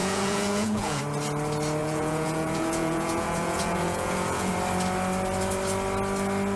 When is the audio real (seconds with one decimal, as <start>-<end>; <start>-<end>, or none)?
1.0-1.8; 4.5-6.6